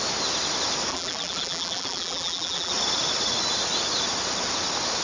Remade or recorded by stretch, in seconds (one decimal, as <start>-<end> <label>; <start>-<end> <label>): 0.0-0.9 recorded; 0.9-2.7 remade; 2.7-5.0 recorded